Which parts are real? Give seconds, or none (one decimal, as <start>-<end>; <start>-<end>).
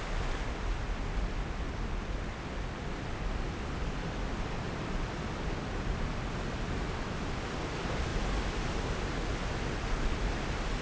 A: 0.0-10.8